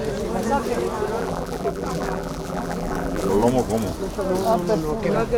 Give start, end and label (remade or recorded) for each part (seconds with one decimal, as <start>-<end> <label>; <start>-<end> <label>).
0.0-1.2 recorded; 1.2-3.3 remade; 3.3-5.4 recorded